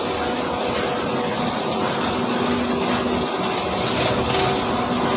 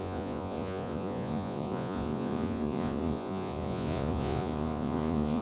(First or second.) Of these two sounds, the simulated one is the second